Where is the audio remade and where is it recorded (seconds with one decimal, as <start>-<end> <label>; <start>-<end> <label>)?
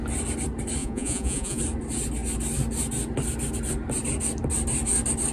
0.0-0.8 recorded; 0.8-1.6 remade; 1.6-5.3 recorded